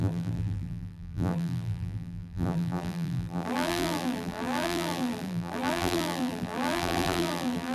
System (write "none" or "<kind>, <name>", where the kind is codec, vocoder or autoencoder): vocoder, BigVGAN v2